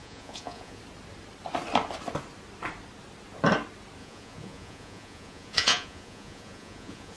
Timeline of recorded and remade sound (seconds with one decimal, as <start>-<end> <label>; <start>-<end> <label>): 0.0-0.8 remade; 0.8-4.0 recorded; 4.0-7.2 remade